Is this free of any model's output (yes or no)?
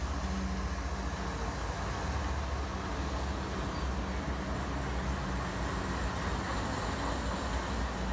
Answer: yes